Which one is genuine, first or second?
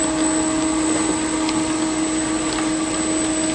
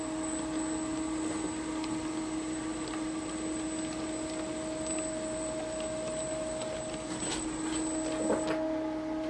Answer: first